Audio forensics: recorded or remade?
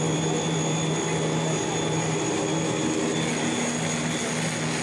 recorded